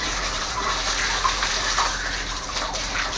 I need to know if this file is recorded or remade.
remade